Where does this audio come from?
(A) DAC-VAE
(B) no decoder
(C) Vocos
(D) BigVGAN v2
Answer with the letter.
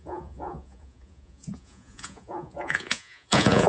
C